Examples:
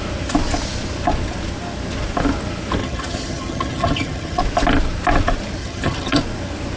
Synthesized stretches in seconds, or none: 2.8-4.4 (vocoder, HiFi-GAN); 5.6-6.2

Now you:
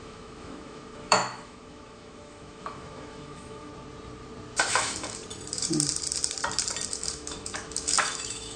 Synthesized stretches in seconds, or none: 0.0-3.7 (autoencoder, DAC-VAE); 4.7-5.2; 6.9-8.6

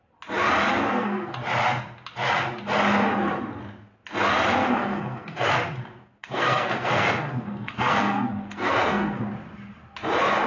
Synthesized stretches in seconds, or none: 0.7-1.3 (codec, SNAC); 4.6-5.5; 6.2-9.2

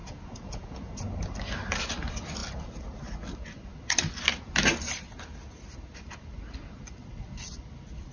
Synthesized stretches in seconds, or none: 0.0-0.9 (vocoder, Vocos)

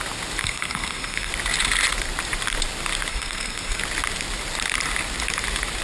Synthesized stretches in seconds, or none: 0.4-1.3 (codec, SNAC); 3.1-3.8

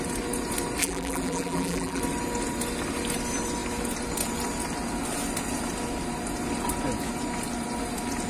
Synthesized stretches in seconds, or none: 0.8-2.0 (vocoder, BigVGAN v2)

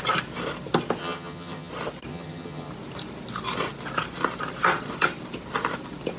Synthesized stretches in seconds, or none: 1.0-1.7 (vocoder, HiFi-GAN); 2.1-2.7

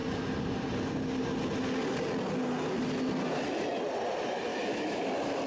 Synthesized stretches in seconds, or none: 4.5-5.1 (autoencoder, DAC-VAE)